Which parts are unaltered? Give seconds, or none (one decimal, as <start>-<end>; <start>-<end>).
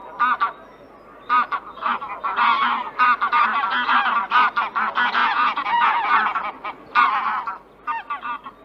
0.0-5.2; 6.4-8.6